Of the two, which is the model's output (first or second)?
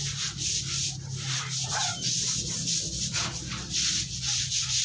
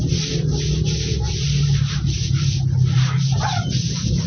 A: second